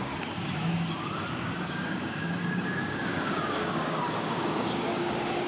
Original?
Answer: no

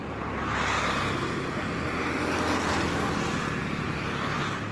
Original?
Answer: yes